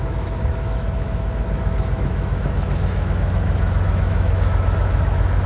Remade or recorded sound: remade